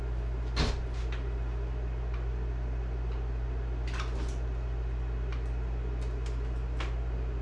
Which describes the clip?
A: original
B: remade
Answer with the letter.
A